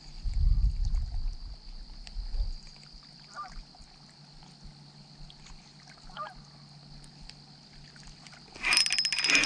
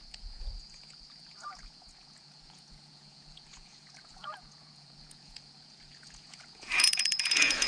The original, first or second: first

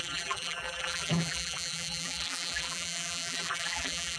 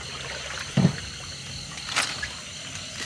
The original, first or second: second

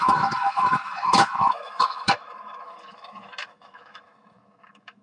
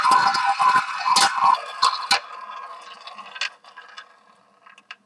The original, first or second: second